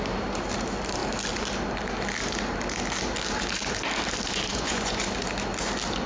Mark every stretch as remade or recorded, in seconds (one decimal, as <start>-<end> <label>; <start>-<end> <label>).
0.0-4.5 recorded; 4.5-5.0 remade; 5.0-6.1 recorded